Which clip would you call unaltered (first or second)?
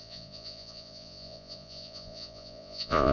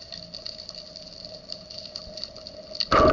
second